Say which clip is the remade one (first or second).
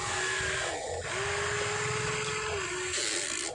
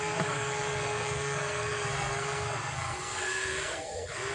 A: second